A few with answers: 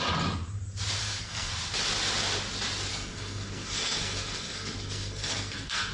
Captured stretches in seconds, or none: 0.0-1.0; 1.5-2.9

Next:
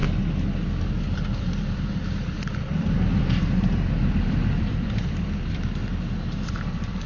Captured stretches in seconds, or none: 0.0-0.9; 5.8-6.4

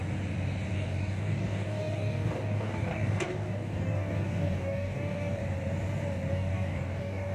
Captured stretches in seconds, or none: 0.0-0.7; 5.4-6.3

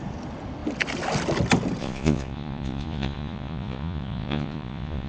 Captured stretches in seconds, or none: 0.0-1.8

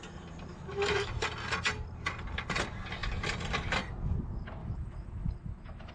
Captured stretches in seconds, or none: 0.0-0.5; 1.1-4.6